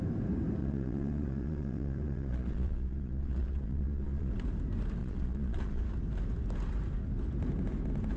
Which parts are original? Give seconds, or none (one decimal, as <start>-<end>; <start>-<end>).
0.0-0.6; 4.3-5.0; 5.8-8.2

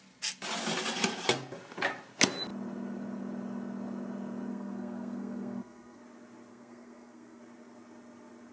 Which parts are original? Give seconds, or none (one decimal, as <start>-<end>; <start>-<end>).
0.0-4.5; 6.0-6.5; 7.4-8.5

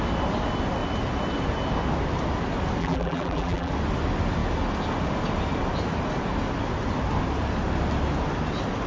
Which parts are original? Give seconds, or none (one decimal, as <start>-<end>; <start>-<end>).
0.0-2.8; 3.7-8.9

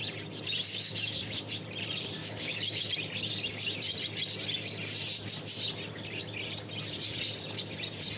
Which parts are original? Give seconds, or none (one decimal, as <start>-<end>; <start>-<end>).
0.0-0.7; 1.4-2.2; 2.9-8.2

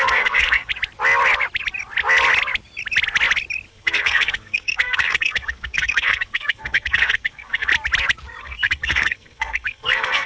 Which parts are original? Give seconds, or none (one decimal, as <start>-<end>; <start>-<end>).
0.7-3.7; 7.7-8.4